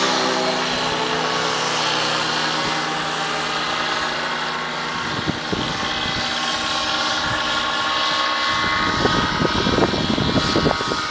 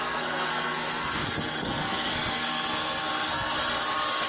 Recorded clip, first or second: first